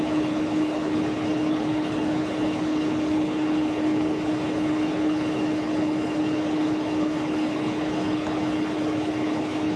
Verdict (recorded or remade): remade